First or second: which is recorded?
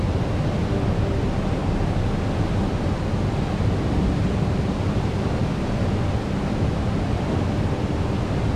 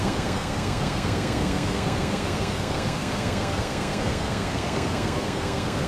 first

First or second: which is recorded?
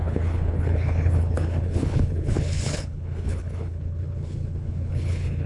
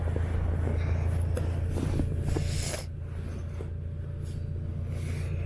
second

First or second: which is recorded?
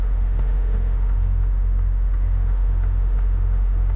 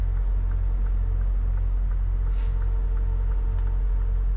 second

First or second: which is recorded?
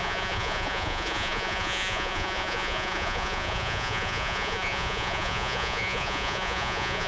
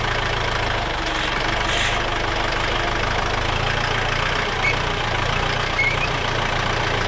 second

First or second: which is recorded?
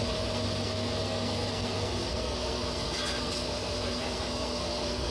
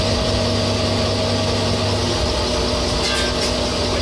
second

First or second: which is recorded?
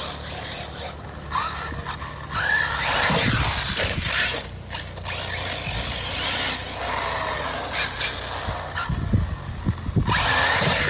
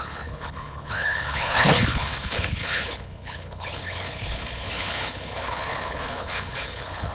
first